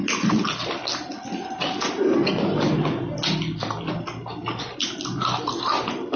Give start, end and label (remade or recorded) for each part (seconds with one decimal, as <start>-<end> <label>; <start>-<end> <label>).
0.0-6.2 recorded